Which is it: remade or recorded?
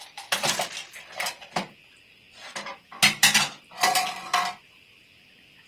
recorded